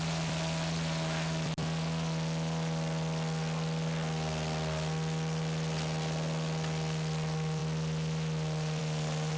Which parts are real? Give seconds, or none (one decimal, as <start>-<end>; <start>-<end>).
0.0-9.4